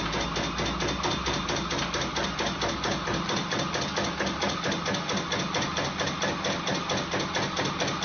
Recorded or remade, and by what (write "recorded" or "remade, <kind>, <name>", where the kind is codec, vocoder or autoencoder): recorded